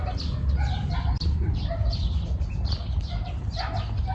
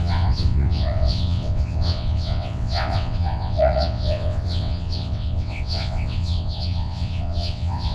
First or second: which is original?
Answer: first